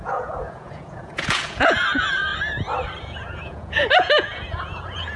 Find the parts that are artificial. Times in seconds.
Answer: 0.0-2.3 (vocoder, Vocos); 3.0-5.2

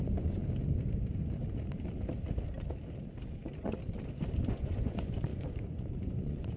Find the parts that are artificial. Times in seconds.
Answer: 0.0-0.4 (vocoder, Vocos); 4.4-6.6

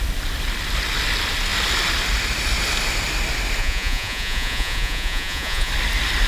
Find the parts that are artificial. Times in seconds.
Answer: 3.6-5.7 (vocoder, Vocos)

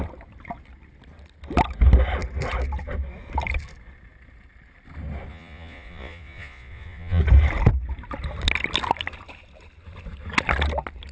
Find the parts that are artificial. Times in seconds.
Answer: 5.3-7.2 (vocoder, Vocos)

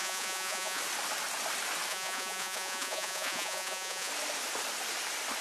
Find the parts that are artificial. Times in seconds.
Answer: 0.0-0.8 (vocoder, Vocos); 1.9-4.1

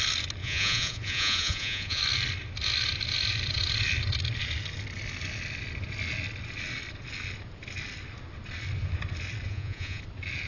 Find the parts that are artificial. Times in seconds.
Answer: 0.4-2.0 (vocoder, Vocos); 9.5-10.0

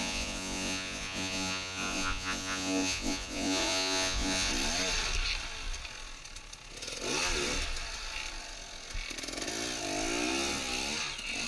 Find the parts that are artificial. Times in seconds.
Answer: 0.0-4.5 (vocoder, Vocos)